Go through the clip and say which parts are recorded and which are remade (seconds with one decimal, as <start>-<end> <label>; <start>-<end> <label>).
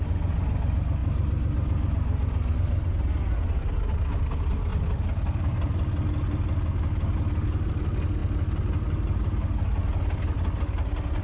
0.0-11.2 recorded